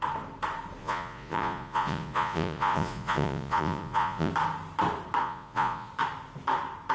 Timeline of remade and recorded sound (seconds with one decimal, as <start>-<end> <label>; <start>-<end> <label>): 0.0-0.8 recorded; 0.8-4.3 remade; 4.3-5.2 recorded; 5.2-5.9 remade; 5.9-6.9 recorded